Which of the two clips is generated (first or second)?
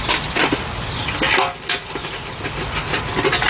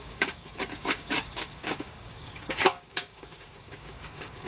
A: second